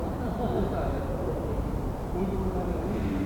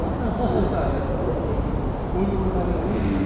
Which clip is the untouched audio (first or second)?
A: second